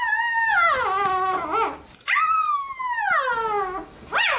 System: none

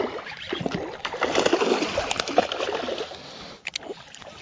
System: none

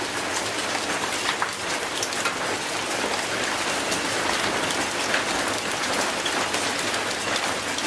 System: none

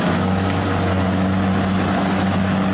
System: none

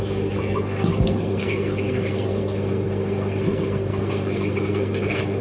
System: codec, SNAC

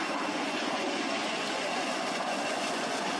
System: vocoder, Vocos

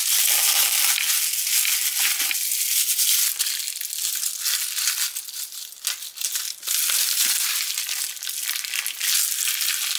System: none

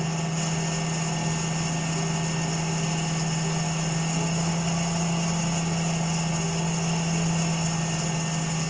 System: none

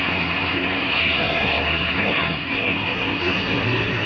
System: codec, SNAC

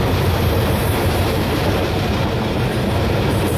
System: vocoder, BigVGAN v2